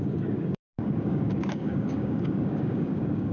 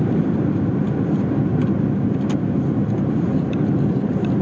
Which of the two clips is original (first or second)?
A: second